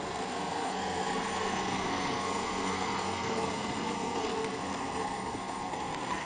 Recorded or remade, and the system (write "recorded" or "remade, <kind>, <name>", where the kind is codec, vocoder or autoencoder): remade, codec, SNAC